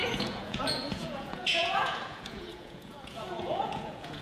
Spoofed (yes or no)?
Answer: yes